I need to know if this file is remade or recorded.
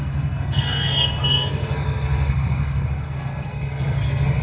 remade